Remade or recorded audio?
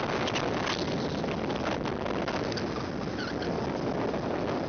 recorded